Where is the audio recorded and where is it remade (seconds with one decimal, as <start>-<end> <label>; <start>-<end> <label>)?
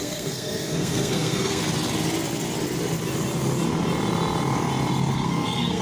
0.0-1.6 remade; 1.6-5.1 recorded; 5.1-5.8 remade